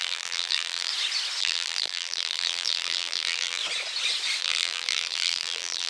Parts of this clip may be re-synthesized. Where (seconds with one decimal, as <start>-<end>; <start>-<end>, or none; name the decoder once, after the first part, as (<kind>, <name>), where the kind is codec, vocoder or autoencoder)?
0.0-0.9 (vocoder, BigVGAN v2); 1.4-3.6; 4.4-5.9